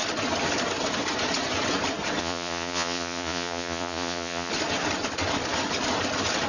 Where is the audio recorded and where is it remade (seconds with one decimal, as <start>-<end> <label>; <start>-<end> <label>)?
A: 0.0-2.2 recorded; 2.2-4.5 remade; 4.5-6.5 recorded